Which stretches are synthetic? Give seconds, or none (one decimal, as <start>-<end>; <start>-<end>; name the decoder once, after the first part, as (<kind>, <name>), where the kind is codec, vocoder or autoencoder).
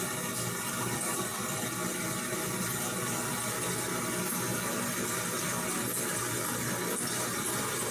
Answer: none